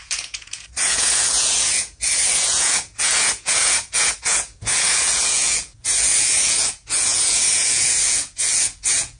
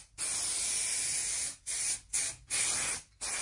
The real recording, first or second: second